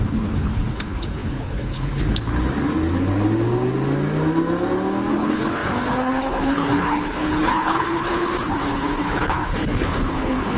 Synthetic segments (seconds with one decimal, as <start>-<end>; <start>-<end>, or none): 0.0-2.3; 5.1-10.6